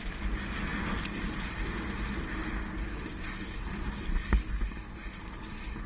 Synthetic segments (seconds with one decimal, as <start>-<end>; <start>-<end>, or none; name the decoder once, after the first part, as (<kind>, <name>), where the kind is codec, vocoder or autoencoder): none

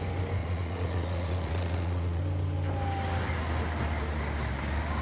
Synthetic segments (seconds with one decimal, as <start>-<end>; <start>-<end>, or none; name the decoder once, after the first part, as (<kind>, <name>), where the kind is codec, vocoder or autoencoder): 0.4-2.2 (vocoder, Vocos)